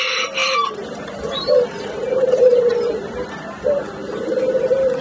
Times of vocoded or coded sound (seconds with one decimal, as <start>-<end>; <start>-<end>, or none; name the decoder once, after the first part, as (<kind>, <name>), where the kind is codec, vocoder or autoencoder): 0.4-3.4 (vocoder, BigVGAN v2)